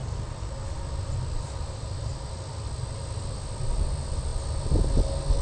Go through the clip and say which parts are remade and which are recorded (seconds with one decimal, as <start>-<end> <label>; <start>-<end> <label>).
0.0-5.4 recorded